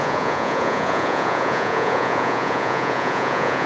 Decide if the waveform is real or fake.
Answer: fake